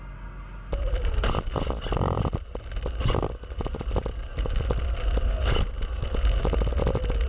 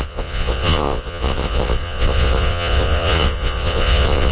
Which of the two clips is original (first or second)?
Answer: first